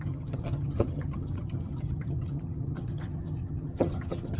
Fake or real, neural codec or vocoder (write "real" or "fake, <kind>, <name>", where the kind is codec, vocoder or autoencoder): fake, vocoder, HiFi-GAN